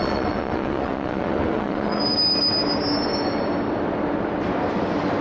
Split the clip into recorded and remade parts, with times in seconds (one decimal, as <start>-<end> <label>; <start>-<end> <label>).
0.0-2.0 remade; 2.0-5.2 recorded